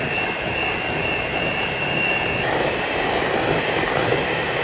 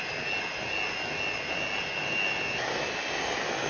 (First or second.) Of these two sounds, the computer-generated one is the first